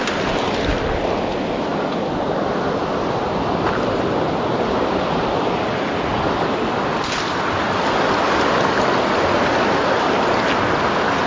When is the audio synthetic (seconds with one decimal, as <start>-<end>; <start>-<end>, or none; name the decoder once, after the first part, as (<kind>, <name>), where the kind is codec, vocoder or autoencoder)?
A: none

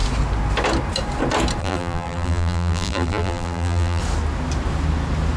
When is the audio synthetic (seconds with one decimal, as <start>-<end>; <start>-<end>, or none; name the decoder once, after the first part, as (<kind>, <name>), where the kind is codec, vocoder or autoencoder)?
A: 1.6-4.0 (vocoder, BigVGAN v2)

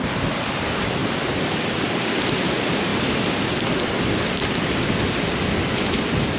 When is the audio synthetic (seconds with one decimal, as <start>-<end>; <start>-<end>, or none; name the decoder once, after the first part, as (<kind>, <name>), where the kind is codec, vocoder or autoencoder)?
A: none

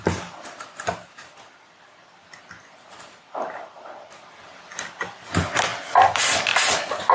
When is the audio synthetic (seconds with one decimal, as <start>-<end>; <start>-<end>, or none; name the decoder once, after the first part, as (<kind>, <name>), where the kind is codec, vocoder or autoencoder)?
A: none

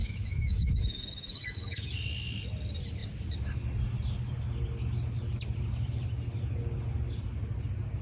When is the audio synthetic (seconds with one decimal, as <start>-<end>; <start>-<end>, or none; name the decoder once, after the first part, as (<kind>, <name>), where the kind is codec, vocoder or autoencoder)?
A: 0.0-1.9 (autoencoder, DAC-VAE)

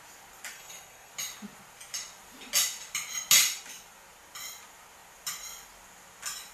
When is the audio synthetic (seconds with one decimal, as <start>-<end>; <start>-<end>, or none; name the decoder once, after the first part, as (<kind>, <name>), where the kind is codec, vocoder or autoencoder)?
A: 0.5-1.1 (codec, SNAC)